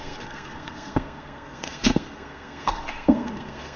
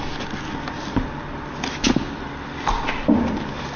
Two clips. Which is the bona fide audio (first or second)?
second